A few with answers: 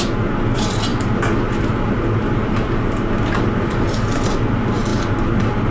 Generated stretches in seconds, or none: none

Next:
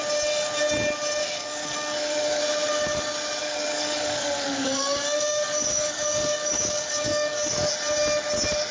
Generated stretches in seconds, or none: 1.2-2.4; 3.4-7.7